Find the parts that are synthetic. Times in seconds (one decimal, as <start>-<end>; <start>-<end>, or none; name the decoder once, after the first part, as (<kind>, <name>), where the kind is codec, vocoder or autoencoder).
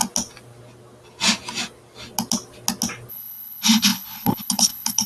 3.1-5.1 (codec, HILCodec)